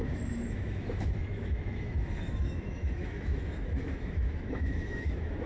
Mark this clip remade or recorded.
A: remade